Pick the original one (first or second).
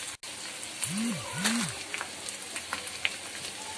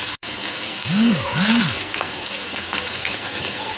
first